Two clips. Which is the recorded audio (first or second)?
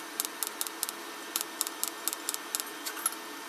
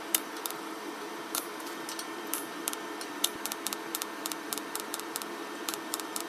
first